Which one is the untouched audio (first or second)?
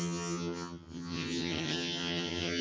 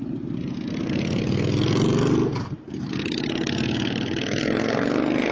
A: second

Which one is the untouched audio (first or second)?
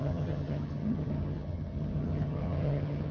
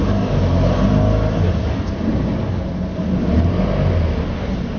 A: second